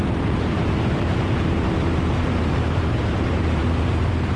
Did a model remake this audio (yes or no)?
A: yes